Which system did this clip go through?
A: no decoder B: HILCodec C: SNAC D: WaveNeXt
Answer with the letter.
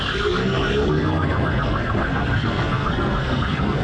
C